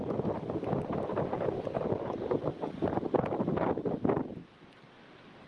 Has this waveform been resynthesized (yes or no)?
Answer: no